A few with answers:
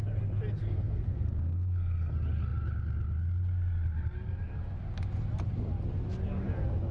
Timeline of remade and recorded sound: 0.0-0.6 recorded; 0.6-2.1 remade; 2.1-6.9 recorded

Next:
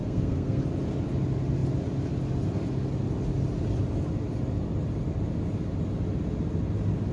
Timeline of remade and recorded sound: 0.0-0.6 remade; 0.6-7.1 recorded

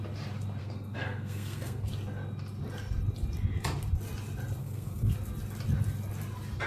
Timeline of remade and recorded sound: 0.0-0.6 recorded; 0.6-1.9 remade; 1.9-4.6 recorded; 4.6-5.1 remade; 5.1-6.7 recorded

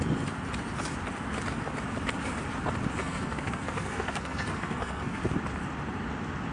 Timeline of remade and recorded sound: 0.0-3.0 recorded; 3.0-5.2 remade; 5.2-6.5 recorded

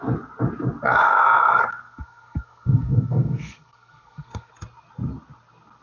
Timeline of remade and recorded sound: 0.0-1.0 recorded; 1.0-4.5 remade; 4.5-5.8 recorded

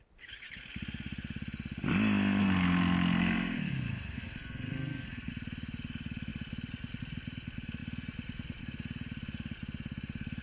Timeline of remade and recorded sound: 0.0-2.4 recorded; 2.4-5.3 remade; 5.3-10.4 recorded